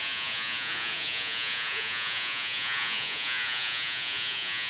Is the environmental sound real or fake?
fake